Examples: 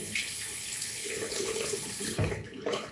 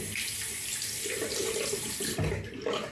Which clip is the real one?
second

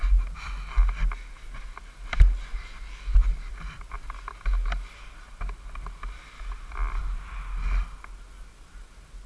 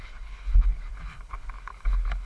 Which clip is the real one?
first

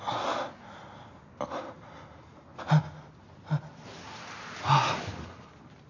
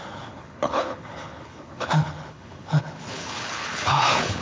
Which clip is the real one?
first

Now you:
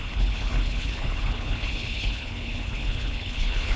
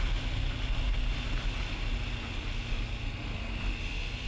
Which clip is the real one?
second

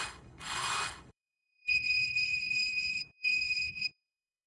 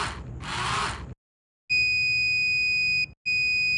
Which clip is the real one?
second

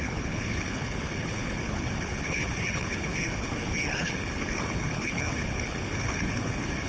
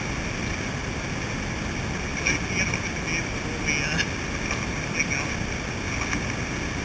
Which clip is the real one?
second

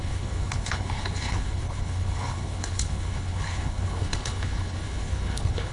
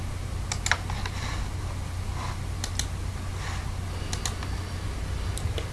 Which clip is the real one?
second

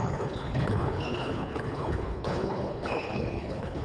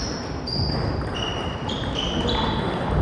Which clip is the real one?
second